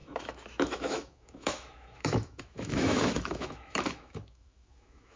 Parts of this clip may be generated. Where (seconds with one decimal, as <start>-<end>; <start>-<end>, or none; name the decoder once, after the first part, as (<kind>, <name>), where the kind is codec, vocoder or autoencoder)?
0.0-5.2 (autoencoder, DAC-VAE)